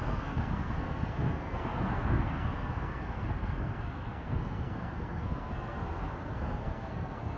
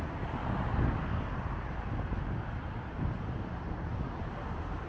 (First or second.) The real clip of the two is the second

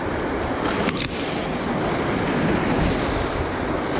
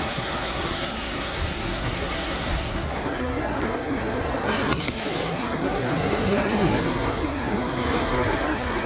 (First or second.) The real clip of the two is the first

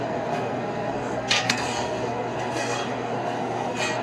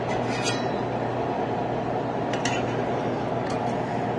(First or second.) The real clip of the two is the second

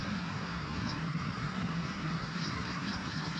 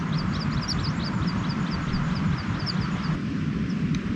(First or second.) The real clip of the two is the second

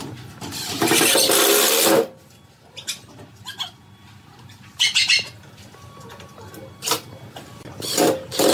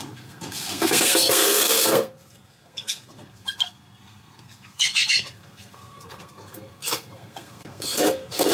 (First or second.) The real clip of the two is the first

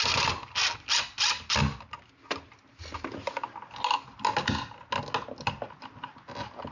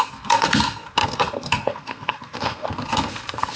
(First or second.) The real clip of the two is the first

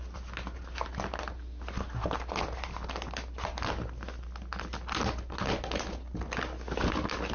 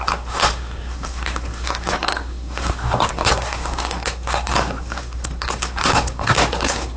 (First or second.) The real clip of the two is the first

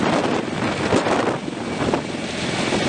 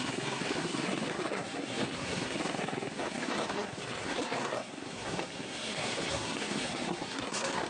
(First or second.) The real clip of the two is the first